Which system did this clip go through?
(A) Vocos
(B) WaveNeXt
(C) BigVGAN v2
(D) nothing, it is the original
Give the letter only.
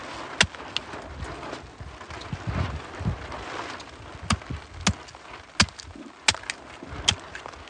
D